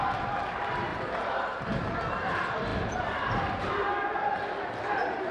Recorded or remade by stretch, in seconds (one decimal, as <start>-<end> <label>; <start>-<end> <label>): 0.0-0.9 recorded; 0.9-1.6 remade; 1.6-2.7 recorded; 2.7-3.7 remade; 3.7-5.3 recorded